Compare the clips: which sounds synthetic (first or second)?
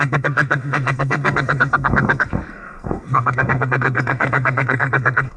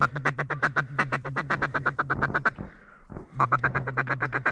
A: first